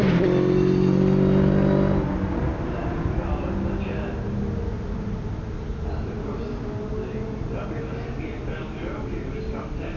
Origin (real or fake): real